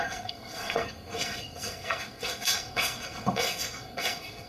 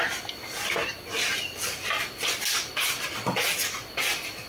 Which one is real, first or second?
second